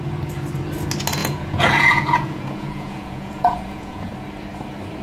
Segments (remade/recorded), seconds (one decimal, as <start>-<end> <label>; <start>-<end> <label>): 0.0-1.2 recorded; 1.2-4.1 remade; 4.1-5.0 recorded